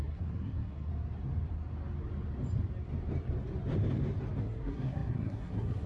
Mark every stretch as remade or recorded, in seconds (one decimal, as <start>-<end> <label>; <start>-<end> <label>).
0.0-0.9 remade; 0.9-4.4 recorded; 4.4-5.9 remade